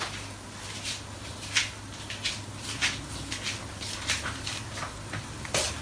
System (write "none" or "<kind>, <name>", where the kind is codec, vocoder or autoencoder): none